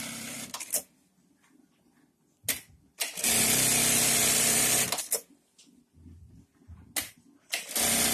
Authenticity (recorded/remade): recorded